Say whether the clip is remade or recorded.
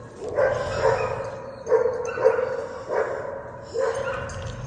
recorded